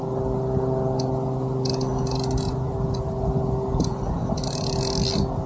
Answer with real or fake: real